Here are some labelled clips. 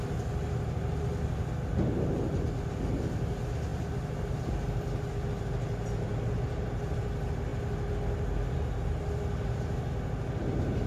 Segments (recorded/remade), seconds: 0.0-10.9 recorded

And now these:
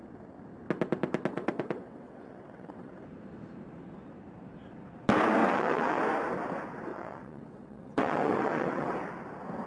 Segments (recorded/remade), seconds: 0.0-1.3 recorded; 1.3-2.9 remade; 2.9-5.4 recorded; 5.4-6.0 remade; 6.0-6.9 recorded; 6.9-8.9 remade; 8.9-9.7 recorded

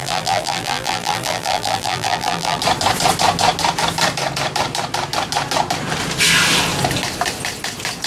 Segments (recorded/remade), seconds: 0.0-2.6 remade; 2.6-8.1 recorded

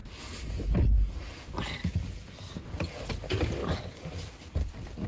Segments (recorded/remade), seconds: 0.0-3.6 recorded; 3.6-4.1 remade; 4.1-5.1 recorded

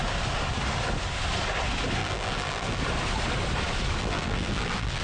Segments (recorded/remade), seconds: 0.0-2.0 recorded; 2.0-2.8 remade; 2.8-4.0 recorded; 4.0-5.0 remade

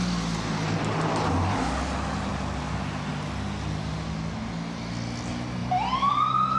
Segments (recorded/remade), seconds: 0.0-5.6 recorded; 5.6-6.1 remade; 6.1-6.6 recorded

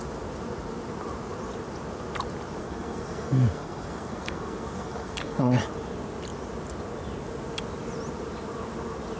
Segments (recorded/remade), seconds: 0.0-2.6 recorded; 2.6-5.5 remade; 5.5-9.2 recorded

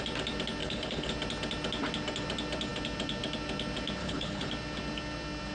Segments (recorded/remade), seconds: 0.0-0.6 recorded; 0.6-1.1 remade; 1.1-4.0 recorded; 4.0-4.5 remade; 4.5-5.5 recorded